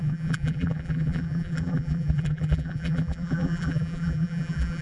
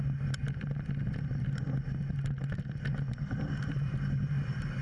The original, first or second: second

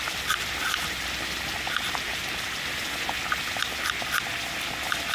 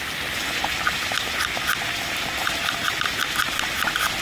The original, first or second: first